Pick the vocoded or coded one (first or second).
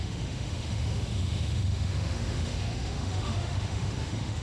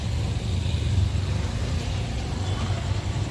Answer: first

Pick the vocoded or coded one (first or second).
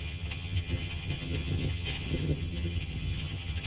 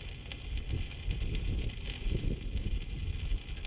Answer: first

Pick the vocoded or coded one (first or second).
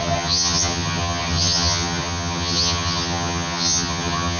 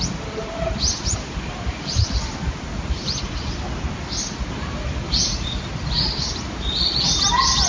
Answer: first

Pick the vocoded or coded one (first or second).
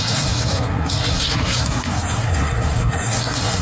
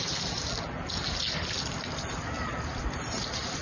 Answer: first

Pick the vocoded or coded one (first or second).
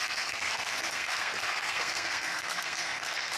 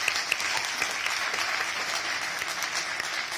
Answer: first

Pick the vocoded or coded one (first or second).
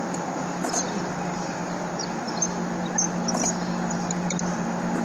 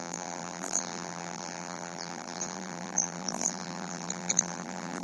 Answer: second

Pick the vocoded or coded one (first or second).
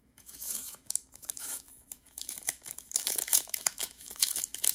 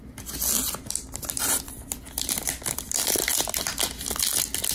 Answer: first